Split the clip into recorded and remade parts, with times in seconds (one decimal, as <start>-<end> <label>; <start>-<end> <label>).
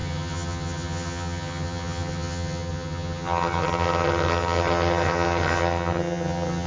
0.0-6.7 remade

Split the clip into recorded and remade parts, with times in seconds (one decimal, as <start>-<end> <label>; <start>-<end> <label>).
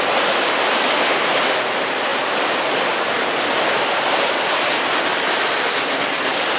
0.0-6.6 recorded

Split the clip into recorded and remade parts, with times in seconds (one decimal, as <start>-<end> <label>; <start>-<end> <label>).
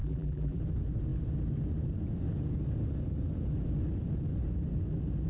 0.0-0.6 remade; 0.6-5.3 recorded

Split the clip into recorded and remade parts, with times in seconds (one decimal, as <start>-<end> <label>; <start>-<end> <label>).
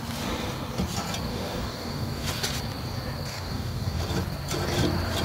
0.0-1.3 recorded; 1.3-2.3 remade; 2.3-3.3 recorded; 3.3-4.0 remade; 4.0-5.2 recorded